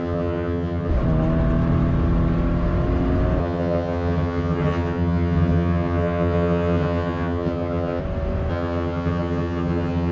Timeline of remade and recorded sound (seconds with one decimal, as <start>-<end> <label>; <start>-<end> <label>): 0.0-0.9 remade; 0.9-3.4 recorded; 3.4-8.0 remade; 8.0-8.5 recorded; 8.5-10.1 remade